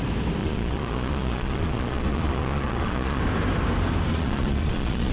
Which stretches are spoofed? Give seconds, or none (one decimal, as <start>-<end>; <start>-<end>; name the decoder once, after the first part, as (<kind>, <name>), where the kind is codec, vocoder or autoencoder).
0.4-3.2 (vocoder, Vocos); 4.1-5.1